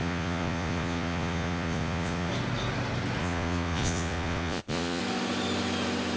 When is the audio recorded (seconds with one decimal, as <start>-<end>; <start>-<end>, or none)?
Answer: 2.3-3.2; 5.0-6.2